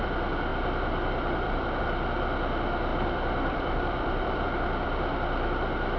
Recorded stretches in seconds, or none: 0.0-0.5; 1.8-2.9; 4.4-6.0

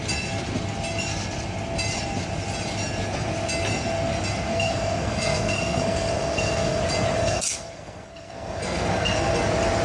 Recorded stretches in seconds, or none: 0.0-4.5; 6.8-7.2; 9.3-9.8

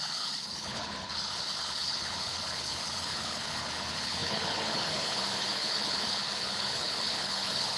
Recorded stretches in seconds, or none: none

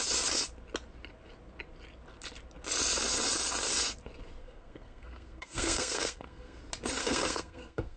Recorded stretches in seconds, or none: 0.0-4.4; 6.6-7.0

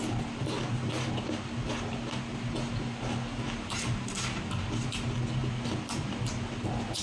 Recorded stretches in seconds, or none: 0.0-7.0

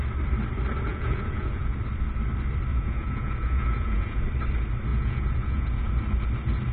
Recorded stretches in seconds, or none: 0.0-0.9; 1.8-2.7; 4.2-4.9; 5.9-6.7

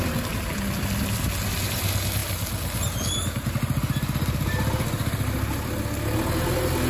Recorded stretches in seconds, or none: 0.0-6.9